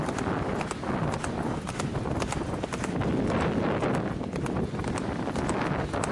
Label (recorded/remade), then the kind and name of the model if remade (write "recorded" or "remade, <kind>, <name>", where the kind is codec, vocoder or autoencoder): recorded